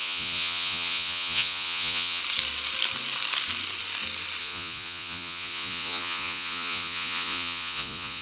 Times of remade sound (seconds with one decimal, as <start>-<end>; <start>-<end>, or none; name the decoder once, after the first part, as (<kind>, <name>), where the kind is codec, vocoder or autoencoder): 0.0-2.2 (vocoder, Vocos); 4.4-8.2